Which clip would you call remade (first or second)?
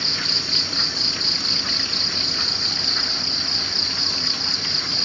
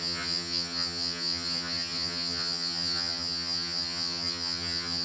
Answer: second